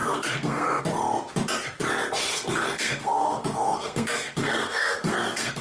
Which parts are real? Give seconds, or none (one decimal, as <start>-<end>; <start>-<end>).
0.8-2.3